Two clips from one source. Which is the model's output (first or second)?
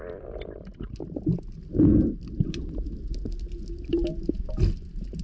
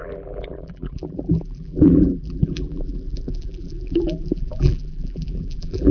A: second